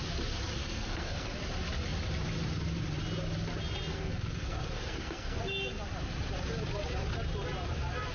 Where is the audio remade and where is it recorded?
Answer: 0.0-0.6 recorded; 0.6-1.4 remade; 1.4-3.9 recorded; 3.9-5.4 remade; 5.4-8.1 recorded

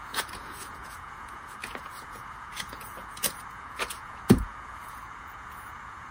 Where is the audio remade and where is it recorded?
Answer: 0.0-6.1 remade

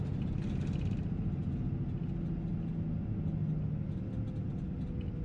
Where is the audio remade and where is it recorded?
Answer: 0.0-5.2 recorded

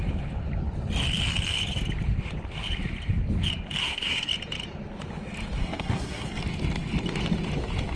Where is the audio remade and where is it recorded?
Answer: 0.0-3.8 recorded; 3.8-4.3 remade; 4.3-5.6 recorded; 5.6-6.4 remade; 6.4-8.0 recorded

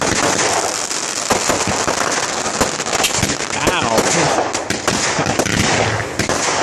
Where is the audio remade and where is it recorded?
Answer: 0.0-6.6 recorded